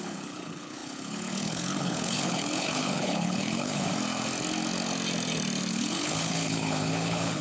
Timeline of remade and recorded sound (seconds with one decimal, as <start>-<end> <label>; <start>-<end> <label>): 0.0-3.9 remade; 3.9-5.7 recorded; 5.7-7.4 remade